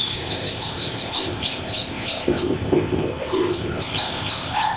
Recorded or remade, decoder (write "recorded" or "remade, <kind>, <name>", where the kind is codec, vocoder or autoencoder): remade, codec, ZipCodec